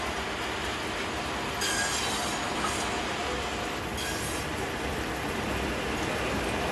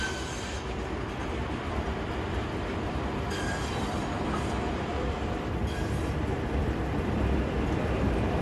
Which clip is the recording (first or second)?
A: first